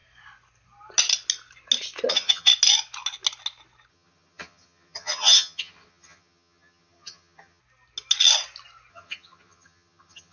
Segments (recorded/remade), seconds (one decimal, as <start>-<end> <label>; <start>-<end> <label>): 0.0-2.1 recorded; 2.1-2.5 remade; 2.5-3.9 recorded; 3.9-7.6 remade; 7.6-8.9 recorded; 8.9-10.3 remade